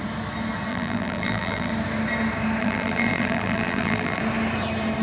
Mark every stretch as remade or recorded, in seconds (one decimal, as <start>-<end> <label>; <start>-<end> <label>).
0.0-0.7 recorded; 0.7-1.7 remade; 1.7-2.6 recorded; 2.6-4.2 remade; 4.2-5.0 recorded